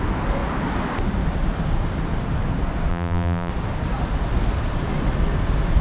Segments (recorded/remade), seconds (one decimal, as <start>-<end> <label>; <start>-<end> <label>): 0.0-2.9 recorded; 2.9-3.5 remade; 3.5-5.8 recorded